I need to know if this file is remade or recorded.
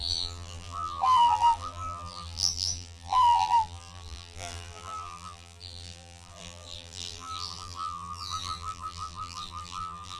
remade